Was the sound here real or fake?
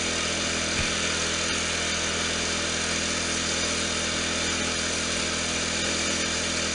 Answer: real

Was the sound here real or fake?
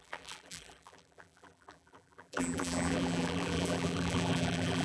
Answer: fake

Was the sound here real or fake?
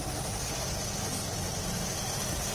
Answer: real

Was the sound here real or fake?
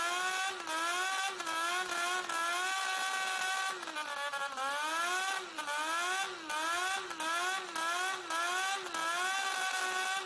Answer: real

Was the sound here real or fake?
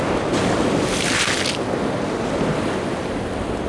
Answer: real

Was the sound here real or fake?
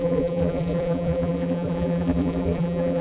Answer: fake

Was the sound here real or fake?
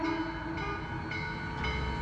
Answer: real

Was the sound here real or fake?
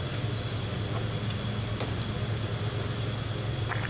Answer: real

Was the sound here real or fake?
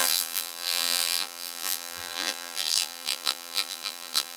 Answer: fake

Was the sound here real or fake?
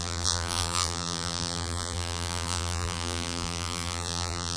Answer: fake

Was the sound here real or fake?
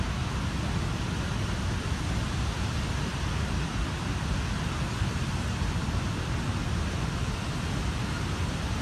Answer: real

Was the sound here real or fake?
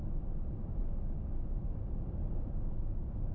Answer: real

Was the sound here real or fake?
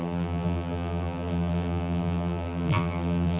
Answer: fake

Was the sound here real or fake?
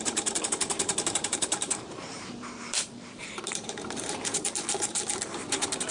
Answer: fake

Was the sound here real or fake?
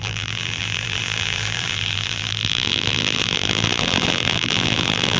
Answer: fake